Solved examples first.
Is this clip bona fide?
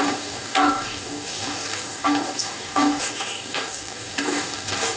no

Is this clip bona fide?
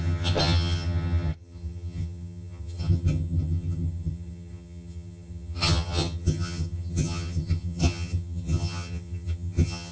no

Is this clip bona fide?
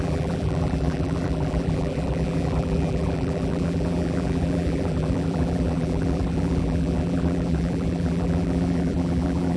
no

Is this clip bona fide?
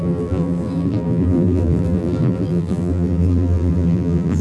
no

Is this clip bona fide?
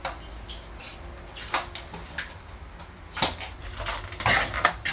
yes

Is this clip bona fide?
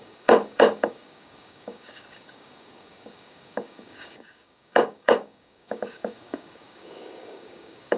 no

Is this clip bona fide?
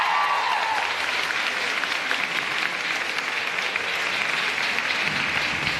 yes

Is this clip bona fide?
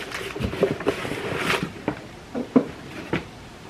no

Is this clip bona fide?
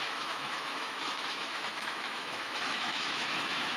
no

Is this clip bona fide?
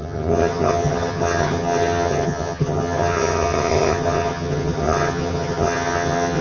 no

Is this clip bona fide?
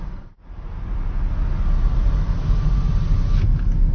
yes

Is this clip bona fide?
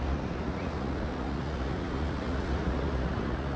no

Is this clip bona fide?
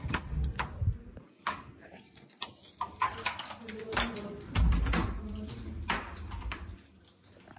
yes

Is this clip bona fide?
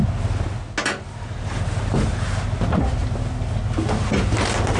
yes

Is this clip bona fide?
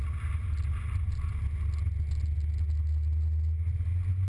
yes